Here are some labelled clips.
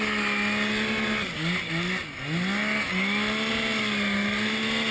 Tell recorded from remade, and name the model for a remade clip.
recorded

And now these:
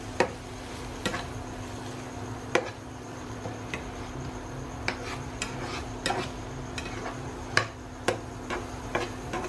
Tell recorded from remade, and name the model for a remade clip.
recorded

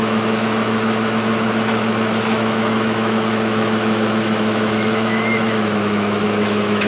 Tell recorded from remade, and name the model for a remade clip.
remade, autoencoder, DAC-VAE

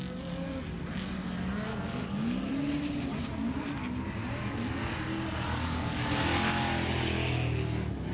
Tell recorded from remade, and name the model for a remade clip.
recorded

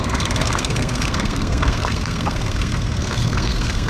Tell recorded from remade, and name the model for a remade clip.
remade, codec, SNAC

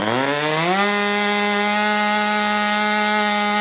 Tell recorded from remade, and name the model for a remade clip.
recorded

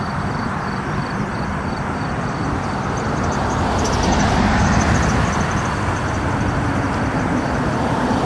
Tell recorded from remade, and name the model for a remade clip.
remade, vocoder, BigVGAN v2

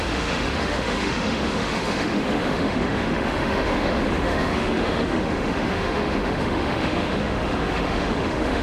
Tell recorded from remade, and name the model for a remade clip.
remade, autoencoder, DAC-VAE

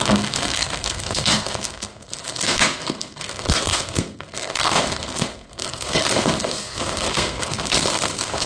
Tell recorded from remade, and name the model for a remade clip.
remade, codec, SNAC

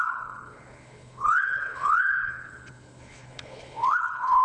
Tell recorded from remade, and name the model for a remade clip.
remade, codec, HILCodec